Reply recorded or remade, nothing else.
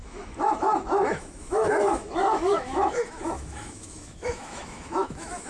remade